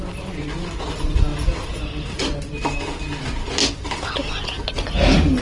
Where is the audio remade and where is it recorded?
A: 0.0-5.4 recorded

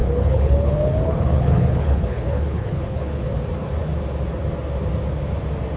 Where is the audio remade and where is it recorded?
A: 0.0-3.3 remade; 3.3-5.8 recorded

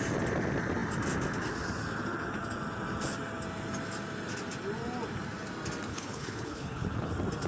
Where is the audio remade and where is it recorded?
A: 0.0-5.9 recorded; 5.9-7.1 remade; 7.1-7.5 recorded

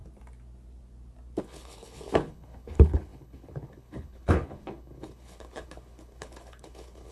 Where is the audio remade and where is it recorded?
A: 0.0-1.4 recorded; 1.4-7.1 remade